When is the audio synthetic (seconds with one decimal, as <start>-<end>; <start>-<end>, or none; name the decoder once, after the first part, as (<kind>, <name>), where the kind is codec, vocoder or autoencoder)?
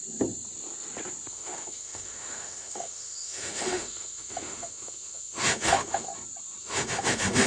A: 1.3-6.1 (autoencoder, DAC-VAE); 6.6-7.5